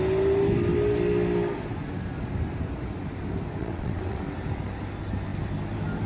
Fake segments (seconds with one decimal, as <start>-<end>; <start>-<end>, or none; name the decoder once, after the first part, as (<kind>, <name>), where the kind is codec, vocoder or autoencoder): 3.6-4.2 (vocoder, WaveNeXt)

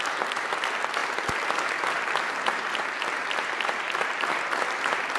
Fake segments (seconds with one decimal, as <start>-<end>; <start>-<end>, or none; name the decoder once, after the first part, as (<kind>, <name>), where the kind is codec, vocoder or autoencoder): none

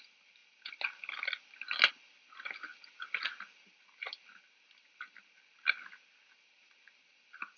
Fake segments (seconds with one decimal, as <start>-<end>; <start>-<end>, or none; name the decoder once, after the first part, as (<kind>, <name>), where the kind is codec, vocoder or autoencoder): none

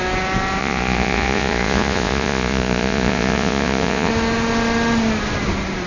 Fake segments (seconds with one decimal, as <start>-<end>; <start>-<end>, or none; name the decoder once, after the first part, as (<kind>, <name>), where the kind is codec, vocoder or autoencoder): 0.6-4.1 (vocoder, Vocos)

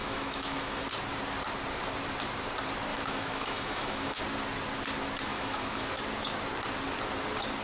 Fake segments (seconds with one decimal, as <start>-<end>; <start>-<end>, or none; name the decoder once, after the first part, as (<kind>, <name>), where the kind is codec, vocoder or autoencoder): 0.0-0.8 (autoencoder, DAC-VAE); 2.9-4.2; 5.3-5.9

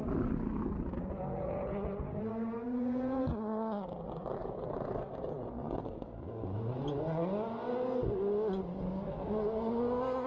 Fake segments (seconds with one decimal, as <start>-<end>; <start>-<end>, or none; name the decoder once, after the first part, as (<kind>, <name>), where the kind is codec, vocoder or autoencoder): 0.9-3.3 (vocoder, Vocos); 4.4-6.2

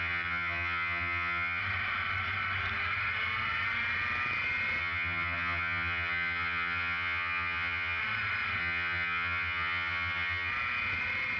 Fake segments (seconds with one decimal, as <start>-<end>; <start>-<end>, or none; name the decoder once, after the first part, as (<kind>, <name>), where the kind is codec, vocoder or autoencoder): 0.0-1.6 (vocoder, HiFi-GAN); 4.8-8.0; 8.6-10.5

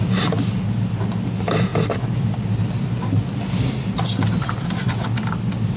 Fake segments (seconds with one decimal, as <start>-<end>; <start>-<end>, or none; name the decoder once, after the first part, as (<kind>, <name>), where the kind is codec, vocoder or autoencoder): none